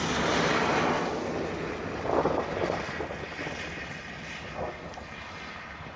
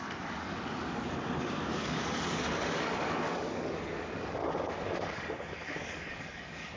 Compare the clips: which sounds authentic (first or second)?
first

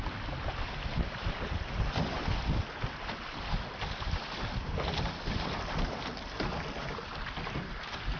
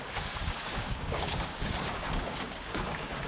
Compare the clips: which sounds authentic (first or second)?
first